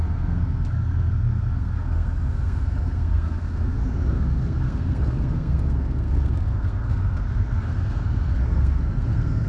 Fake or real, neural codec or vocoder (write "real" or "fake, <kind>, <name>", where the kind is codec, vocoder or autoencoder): fake, codec, SNAC